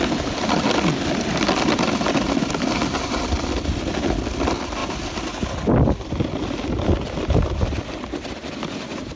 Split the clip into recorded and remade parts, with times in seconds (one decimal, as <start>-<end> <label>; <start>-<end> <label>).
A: 0.0-9.2 recorded